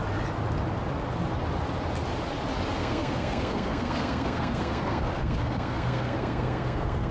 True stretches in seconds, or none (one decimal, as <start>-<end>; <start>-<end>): 0.0-2.8